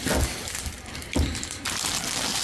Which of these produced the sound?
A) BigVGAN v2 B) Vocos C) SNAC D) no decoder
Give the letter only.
D